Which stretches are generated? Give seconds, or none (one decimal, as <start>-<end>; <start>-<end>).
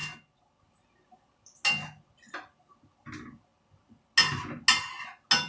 none